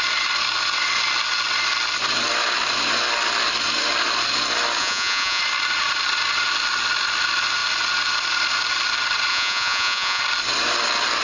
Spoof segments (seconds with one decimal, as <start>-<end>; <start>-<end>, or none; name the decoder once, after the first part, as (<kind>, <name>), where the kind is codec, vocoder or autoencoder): 4.8-5.4 (vocoder, Vocos); 9.3-10.2